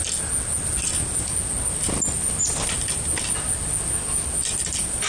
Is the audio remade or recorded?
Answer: recorded